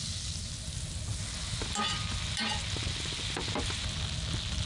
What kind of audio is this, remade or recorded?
recorded